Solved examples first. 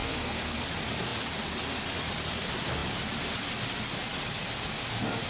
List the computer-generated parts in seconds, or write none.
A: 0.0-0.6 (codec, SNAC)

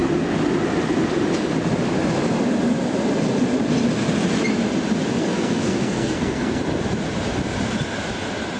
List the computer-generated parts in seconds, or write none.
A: 5.2-6.6 (codec, SNAC)

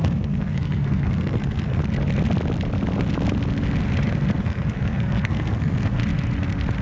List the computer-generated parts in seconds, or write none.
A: 0.0-1.8 (codec, SNAC); 4.4-6.0

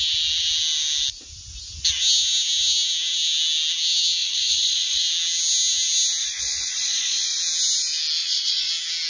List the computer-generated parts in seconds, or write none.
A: 4.2-5.0 (vocoder, Vocos); 6.2-7.4; 8.2-8.7

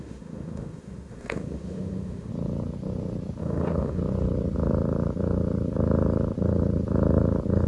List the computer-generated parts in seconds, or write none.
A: 0.0-2.3 (autoencoder, DAC-VAE); 3.4-4.0

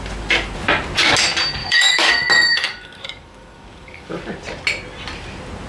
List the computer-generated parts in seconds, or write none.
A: 1.6-2.1 (codec, DAC); 2.5-4.2